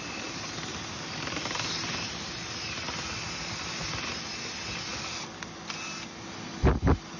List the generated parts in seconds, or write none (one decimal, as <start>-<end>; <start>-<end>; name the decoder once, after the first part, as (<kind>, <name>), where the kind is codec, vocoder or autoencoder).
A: none